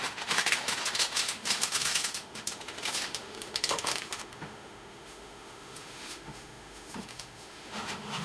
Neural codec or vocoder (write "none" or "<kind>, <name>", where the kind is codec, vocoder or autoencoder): autoencoder, DAC-VAE